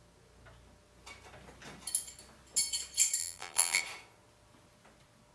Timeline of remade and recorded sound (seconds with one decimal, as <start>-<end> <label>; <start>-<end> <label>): 0.0-3.2 recorded; 3.2-3.8 remade; 3.8-5.3 recorded